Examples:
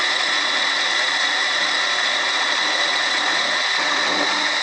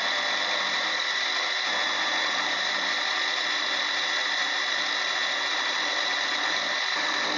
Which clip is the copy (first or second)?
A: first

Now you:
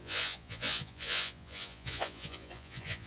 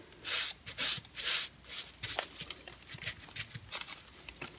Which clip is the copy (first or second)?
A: first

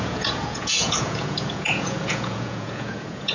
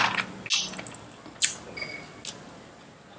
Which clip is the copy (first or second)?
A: first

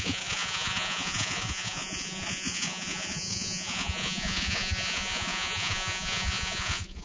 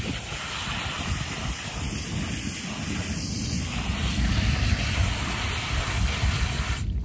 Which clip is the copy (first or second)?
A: first